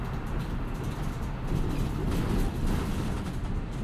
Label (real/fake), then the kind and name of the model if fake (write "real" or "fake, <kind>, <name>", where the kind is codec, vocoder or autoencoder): real